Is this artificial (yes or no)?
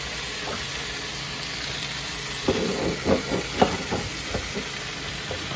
no